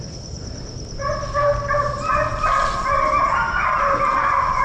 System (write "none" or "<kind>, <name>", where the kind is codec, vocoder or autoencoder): none